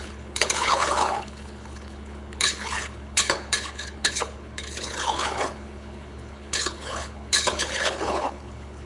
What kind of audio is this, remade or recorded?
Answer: remade